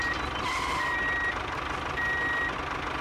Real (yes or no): yes